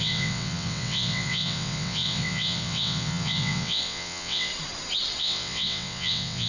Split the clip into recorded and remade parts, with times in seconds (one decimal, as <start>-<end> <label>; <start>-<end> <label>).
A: 0.0-4.5 remade; 4.5-5.2 recorded; 5.2-6.5 remade